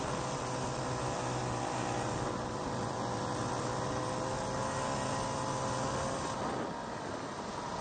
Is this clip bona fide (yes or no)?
yes